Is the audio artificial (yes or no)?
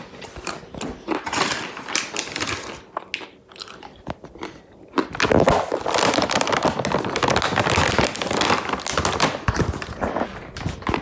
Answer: no